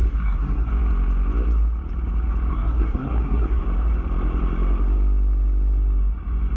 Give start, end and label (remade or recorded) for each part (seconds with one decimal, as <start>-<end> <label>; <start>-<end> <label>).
0.0-0.7 remade; 0.7-2.5 recorded; 2.5-3.6 remade; 3.6-6.6 recorded